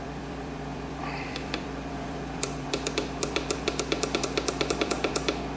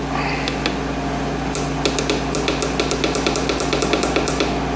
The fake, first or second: first